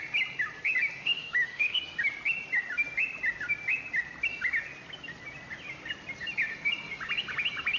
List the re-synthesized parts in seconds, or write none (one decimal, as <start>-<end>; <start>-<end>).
1.0-1.8